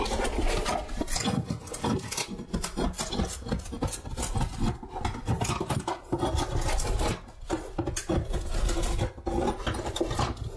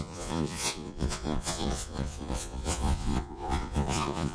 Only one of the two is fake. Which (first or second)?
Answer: second